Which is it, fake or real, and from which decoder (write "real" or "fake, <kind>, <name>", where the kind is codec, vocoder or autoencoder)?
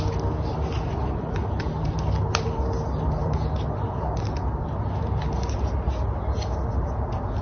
real